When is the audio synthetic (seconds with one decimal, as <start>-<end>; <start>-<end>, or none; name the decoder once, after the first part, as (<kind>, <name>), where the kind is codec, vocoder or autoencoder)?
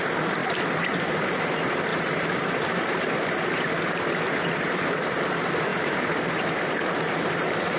1.9-3.5 (vocoder, BigVGAN v2); 5.7-7.8